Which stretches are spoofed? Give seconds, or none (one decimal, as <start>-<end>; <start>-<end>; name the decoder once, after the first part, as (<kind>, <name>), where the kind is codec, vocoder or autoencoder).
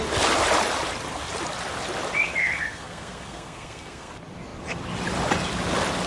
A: 2.4-4.1 (codec, SNAC)